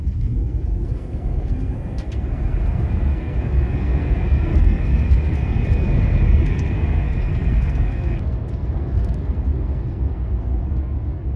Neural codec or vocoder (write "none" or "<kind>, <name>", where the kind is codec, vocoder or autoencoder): codec, SNAC